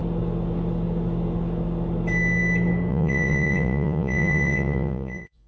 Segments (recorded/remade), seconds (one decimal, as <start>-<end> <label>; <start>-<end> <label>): 0.0-2.9 recorded; 2.9-5.5 remade

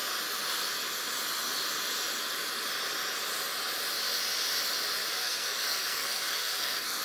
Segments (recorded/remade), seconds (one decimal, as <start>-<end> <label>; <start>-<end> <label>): 0.0-5.2 recorded; 5.2-7.0 remade